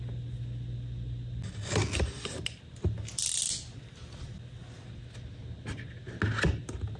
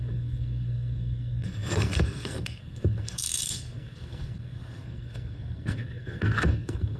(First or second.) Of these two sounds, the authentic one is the first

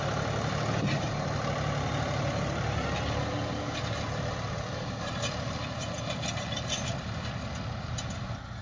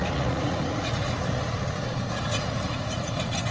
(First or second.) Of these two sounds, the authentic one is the first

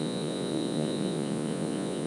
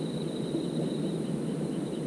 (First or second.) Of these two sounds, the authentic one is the second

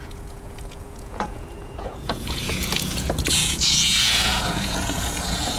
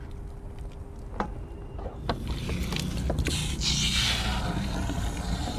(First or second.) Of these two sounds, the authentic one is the second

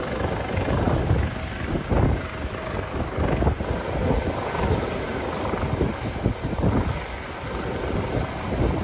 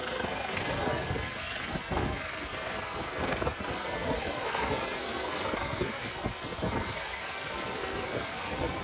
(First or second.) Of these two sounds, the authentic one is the first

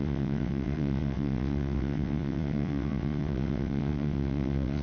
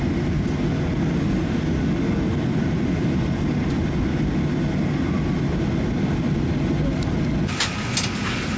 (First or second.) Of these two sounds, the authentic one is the second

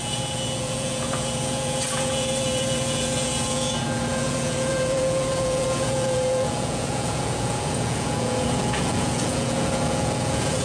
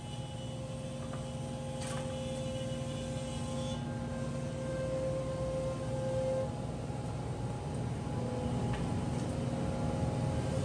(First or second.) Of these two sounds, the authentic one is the second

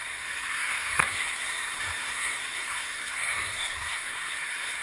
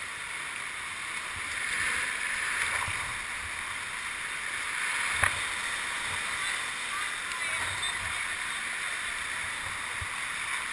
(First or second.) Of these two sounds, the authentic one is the second